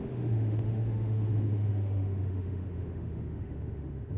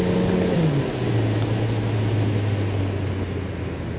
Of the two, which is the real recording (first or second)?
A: second